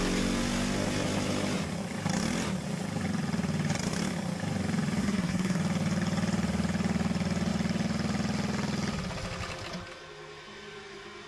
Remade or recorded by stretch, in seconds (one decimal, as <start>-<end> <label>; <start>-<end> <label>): 0.0-5.0 recorded; 5.0-5.6 remade; 5.6-11.3 recorded